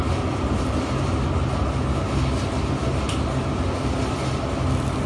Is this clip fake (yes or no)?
no